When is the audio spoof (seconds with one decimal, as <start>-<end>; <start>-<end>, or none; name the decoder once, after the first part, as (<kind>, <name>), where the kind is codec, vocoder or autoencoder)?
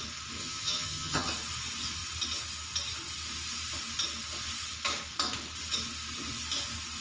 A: 0.4-1.3 (vocoder, HiFi-GAN)